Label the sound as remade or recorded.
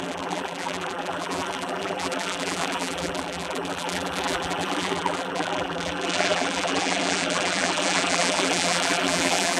remade